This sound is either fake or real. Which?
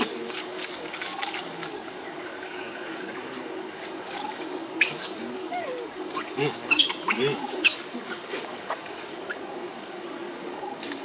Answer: fake